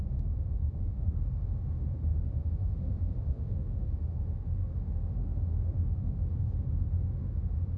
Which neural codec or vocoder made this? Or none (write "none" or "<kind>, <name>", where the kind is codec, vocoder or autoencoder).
autoencoder, DAC-VAE